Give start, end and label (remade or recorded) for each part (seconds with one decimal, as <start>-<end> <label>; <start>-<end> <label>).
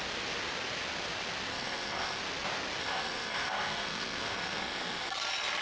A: 0.0-1.5 recorded; 1.5-2.2 remade; 2.2-2.8 recorded; 2.8-5.1 remade; 5.1-5.6 recorded